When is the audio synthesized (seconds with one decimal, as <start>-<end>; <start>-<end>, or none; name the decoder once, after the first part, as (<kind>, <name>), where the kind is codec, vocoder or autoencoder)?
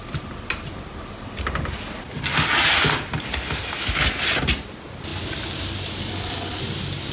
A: 6.1-6.6 (codec, HILCodec)